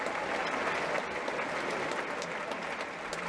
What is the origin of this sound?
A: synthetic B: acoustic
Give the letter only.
B